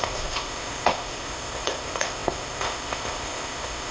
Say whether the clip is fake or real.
fake